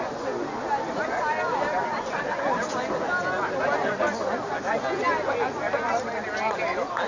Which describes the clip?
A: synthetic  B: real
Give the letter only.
B